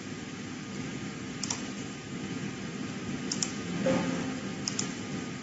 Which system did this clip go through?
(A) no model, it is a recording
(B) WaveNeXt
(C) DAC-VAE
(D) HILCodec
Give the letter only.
A